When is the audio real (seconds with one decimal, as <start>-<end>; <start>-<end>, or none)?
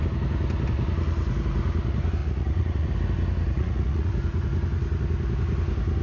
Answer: 0.0-2.2; 2.9-3.5; 4.1-6.0